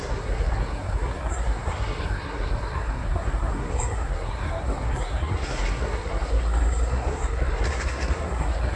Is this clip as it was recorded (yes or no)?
no